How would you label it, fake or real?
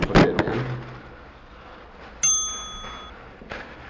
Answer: real